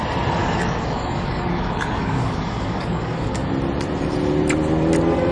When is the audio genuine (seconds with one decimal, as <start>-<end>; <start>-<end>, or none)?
0.0-0.4; 3.5-5.3